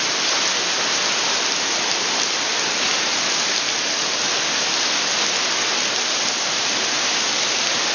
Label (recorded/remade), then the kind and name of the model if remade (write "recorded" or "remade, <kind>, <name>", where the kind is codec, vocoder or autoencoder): recorded